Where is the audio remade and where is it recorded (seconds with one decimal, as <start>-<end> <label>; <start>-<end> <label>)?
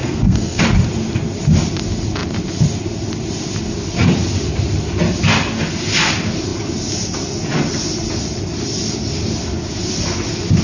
0.0-0.6 remade; 0.6-10.6 recorded